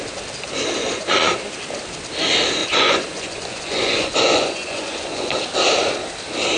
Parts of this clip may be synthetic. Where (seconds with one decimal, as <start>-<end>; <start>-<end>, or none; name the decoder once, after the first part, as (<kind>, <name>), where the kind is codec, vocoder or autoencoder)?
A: 0.8-1.4 (vocoder, Vocos); 2.6-5.3